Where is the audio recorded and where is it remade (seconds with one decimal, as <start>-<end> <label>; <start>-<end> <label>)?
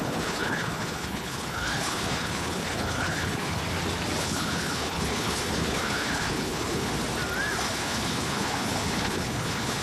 0.0-3.6 remade; 3.6-4.2 recorded; 4.2-6.9 remade; 6.9-7.7 recorded; 7.7-9.8 remade